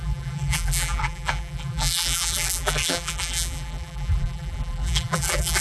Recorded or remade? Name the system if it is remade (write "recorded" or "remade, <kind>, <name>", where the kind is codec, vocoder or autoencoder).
remade, vocoder, BigVGAN v2